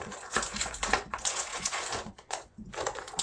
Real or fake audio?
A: fake